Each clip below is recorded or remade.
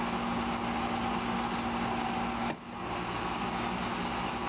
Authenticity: recorded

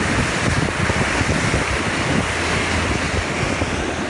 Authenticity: recorded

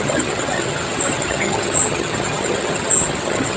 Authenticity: remade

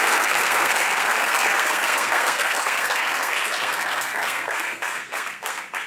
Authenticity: remade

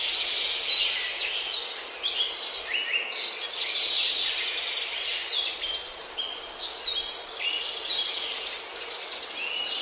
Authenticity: recorded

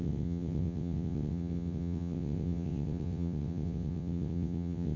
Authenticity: remade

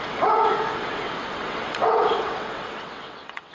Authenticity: remade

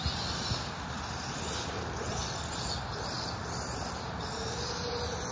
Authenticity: recorded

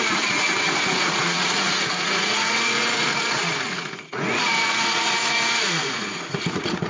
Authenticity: remade